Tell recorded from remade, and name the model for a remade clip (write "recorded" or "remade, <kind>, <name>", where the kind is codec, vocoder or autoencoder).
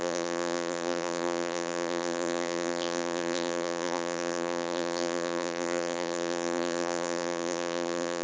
remade, vocoder, BigVGAN v2